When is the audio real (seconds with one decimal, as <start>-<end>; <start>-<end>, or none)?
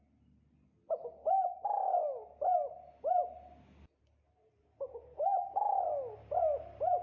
0.0-7.0